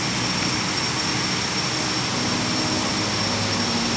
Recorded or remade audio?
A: recorded